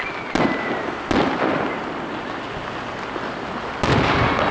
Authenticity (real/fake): real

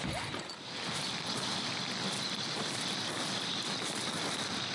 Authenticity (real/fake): real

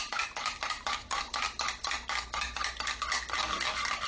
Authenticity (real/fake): real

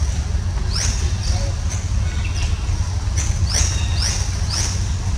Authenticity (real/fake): real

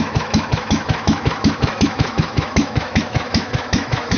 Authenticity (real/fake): fake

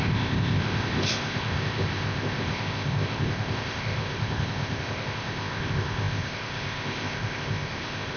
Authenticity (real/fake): fake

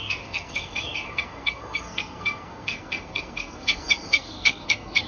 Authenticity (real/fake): fake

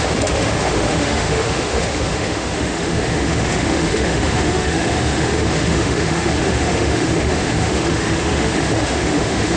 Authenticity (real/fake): fake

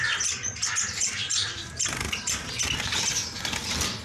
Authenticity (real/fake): fake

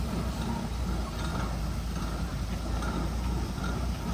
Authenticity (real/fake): real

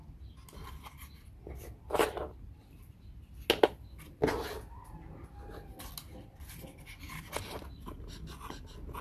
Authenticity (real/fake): real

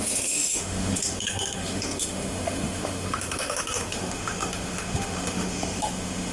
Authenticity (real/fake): fake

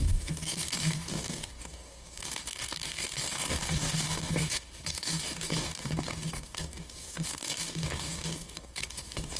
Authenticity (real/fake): fake